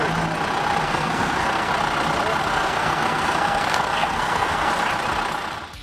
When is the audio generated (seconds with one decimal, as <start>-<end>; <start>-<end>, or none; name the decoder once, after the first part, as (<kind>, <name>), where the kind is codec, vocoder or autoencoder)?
0.8-1.7 (codec, SNAC); 2.4-4.7